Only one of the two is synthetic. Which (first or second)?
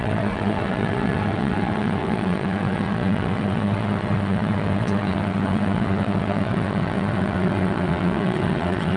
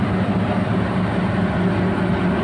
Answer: first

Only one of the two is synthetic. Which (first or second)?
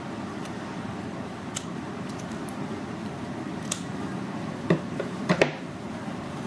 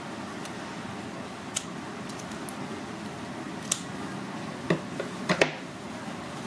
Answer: first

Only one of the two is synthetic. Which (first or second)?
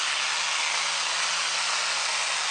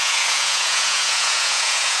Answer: second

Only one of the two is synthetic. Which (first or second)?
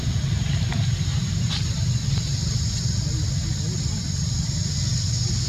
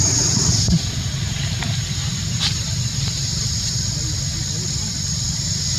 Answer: second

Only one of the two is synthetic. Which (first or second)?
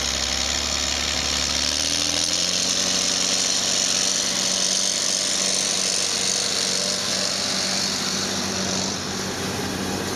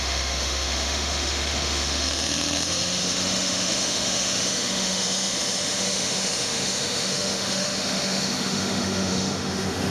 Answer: second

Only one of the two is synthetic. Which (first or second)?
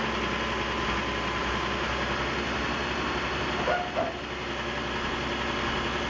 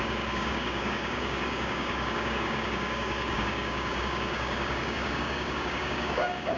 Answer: second